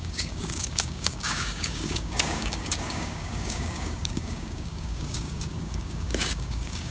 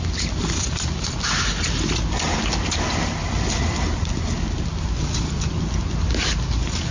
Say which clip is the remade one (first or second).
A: first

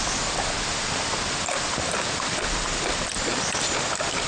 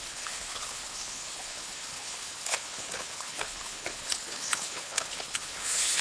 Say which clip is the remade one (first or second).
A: second